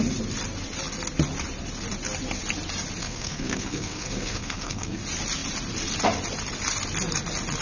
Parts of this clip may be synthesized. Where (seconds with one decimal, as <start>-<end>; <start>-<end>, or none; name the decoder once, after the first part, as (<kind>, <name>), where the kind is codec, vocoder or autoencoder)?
3.0-5.0 (codec, SNAC)